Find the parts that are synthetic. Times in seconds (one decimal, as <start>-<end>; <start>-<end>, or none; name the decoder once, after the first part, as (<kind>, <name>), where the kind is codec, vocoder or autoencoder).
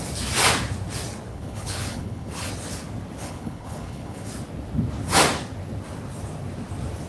1.3-2.5 (codec, HILCodec); 3.2-4.3